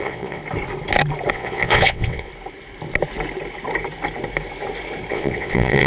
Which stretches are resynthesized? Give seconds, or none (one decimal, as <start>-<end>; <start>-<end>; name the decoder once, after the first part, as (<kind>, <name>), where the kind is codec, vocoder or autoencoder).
0.0-0.4 (vocoder, WaveNeXt); 1.3-2.3; 5.1-5.9

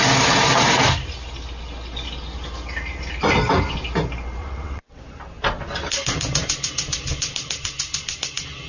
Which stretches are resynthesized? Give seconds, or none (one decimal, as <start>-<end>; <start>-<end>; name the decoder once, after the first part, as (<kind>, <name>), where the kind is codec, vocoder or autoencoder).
4.4-5.0 (vocoder, WaveNeXt)

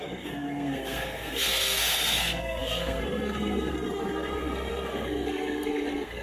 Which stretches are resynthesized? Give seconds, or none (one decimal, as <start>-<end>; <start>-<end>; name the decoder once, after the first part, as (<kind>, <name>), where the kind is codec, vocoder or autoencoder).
0.0-6.2 (codec, SNAC)

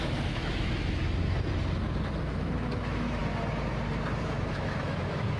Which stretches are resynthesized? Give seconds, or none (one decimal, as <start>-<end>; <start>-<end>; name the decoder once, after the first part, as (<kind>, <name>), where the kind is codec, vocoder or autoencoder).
0.0-1.0 (autoencoder, DAC-VAE); 2.2-3.2; 4.2-5.4

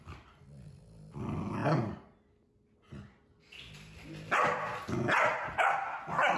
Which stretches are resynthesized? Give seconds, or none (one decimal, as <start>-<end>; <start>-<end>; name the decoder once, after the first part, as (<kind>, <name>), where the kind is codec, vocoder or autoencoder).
none

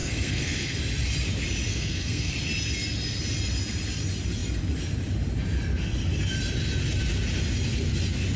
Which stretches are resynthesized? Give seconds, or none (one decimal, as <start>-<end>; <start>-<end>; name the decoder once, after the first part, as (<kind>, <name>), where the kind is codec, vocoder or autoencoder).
0.0-0.8 (codec, SNAC); 1.7-2.3

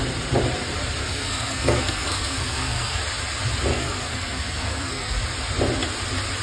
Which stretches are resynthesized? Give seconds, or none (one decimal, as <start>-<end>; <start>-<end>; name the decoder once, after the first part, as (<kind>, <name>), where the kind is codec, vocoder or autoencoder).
1.0-3.0 (codec, SNAC); 3.7-5.2